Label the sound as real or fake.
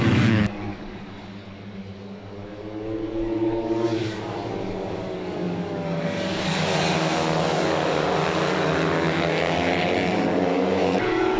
fake